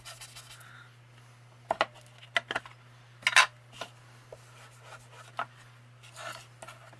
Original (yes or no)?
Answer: yes